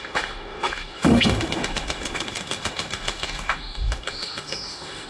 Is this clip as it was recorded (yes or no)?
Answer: no